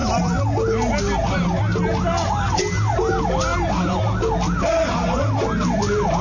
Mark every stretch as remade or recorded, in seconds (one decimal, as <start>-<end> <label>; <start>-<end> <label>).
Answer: 0.0-6.2 recorded